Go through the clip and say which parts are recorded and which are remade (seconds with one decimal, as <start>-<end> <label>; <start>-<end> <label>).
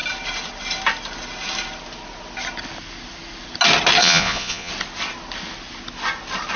0.0-4.0 recorded; 4.0-4.7 remade; 4.7-6.6 recorded